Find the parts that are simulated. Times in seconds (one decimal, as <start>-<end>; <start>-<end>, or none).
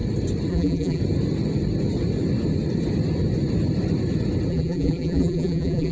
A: 0.5-1.0; 4.5-5.9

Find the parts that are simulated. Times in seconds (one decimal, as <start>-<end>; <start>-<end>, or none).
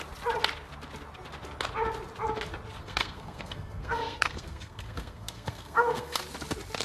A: 2.8-6.2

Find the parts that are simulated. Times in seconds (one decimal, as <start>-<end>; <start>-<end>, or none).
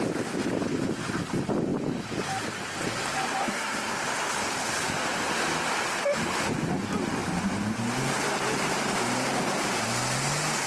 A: 3.4-4.0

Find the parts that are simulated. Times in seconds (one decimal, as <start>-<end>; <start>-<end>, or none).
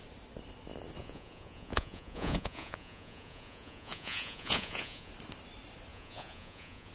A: 1.0-5.1; 5.9-6.9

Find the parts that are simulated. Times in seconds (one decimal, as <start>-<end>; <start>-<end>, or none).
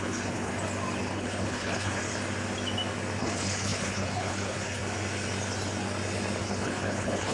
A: 0.0-0.5; 1.0-2.0; 3.2-4.8; 6.4-7.3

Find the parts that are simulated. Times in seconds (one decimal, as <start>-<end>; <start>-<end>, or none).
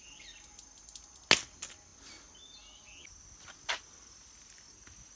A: none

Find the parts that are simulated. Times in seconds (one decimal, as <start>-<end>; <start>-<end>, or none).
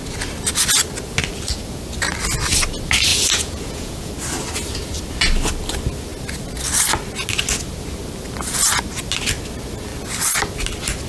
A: 3.1-4.1